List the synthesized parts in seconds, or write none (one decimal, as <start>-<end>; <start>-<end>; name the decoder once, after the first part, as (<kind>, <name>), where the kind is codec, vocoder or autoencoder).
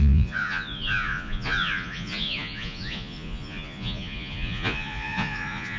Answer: 0.0-5.8 (vocoder, Vocos)